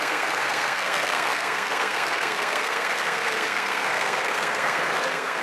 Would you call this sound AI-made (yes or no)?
yes